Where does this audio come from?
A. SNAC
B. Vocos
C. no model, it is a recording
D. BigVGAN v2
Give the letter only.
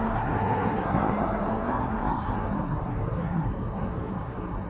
A